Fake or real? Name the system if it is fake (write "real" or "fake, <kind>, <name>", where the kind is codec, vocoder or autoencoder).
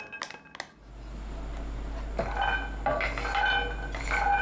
real